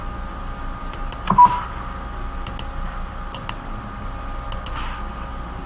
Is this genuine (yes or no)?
yes